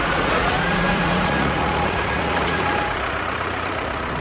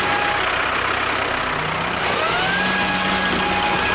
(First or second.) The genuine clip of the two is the second